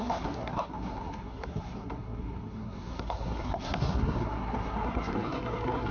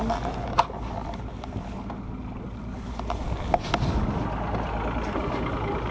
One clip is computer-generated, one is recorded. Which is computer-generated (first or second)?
first